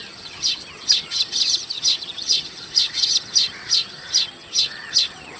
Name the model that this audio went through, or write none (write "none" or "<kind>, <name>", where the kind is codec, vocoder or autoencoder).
vocoder, HiFi-GAN